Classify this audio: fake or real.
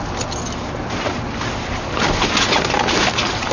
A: real